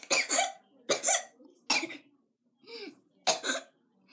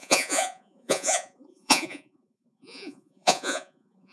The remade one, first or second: second